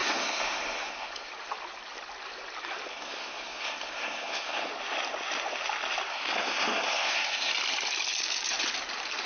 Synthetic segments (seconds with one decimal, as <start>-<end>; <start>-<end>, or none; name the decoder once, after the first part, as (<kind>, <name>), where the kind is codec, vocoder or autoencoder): 0.0-1.3 (codec, SNAC); 2.9-4.7; 6.1-7.5